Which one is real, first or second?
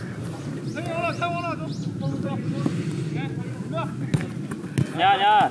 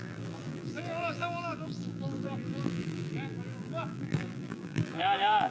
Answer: first